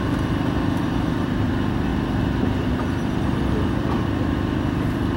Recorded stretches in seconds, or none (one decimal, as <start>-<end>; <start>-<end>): 1.9-2.7